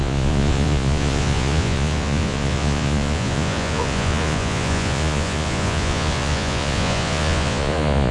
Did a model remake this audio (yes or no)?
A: yes